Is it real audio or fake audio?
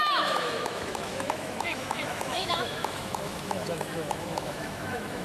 fake